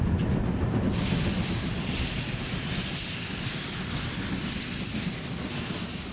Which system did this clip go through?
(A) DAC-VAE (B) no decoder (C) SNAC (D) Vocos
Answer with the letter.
B